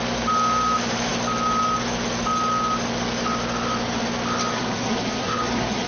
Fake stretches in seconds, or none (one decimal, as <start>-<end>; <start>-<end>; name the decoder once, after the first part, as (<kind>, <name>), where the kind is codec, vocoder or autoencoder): 4.5-5.9 (codec, SNAC)